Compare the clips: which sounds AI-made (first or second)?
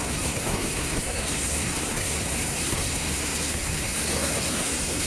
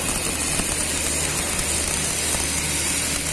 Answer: first